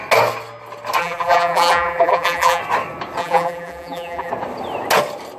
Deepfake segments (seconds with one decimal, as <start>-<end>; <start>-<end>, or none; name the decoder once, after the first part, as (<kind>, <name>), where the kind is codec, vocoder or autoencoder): 1.0-2.6 (vocoder, BigVGAN v2); 3.2-4.3